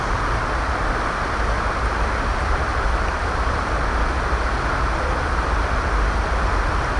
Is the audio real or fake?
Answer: real